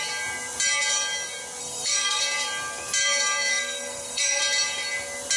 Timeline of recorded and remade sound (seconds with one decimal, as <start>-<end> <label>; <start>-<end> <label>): 0.0-1.6 recorded; 1.6-2.2 remade; 2.2-3.5 recorded; 3.5-4.4 remade; 4.4-5.4 recorded